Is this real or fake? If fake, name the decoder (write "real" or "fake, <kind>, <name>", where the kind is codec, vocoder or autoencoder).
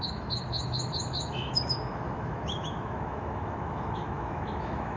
fake, autoencoder, DAC-VAE